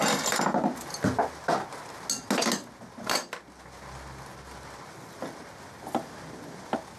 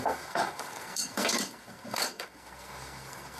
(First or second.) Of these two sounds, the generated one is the second